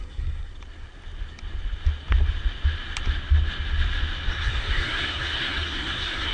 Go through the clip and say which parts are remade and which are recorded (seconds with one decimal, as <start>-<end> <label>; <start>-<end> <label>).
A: 0.0-0.5 remade; 0.5-4.3 recorded; 4.3-6.3 remade